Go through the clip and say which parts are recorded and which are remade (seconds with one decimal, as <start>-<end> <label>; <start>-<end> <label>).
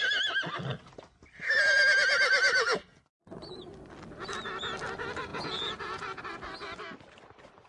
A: 0.0-5.3 recorded; 5.3-6.2 remade; 6.2-7.7 recorded